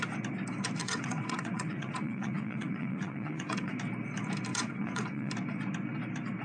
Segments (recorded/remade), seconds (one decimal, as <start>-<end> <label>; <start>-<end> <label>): 0.0-0.8 recorded; 0.8-3.7 remade; 3.7-4.5 recorded; 4.5-5.3 remade; 5.3-6.4 recorded